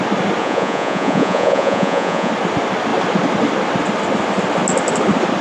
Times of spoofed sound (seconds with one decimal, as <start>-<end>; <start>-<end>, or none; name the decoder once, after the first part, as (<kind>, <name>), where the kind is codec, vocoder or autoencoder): 0.4-2.3 (vocoder, Vocos)